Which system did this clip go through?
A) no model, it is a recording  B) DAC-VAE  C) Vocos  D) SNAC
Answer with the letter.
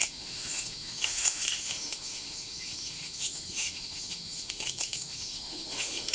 B